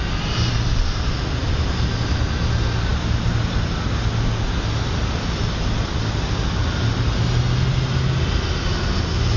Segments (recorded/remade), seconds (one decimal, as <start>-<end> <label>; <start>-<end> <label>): 0.0-9.4 recorded